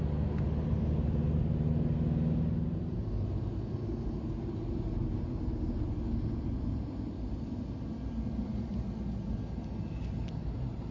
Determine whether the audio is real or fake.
real